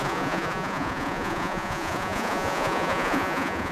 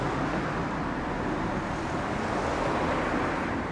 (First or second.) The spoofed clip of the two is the first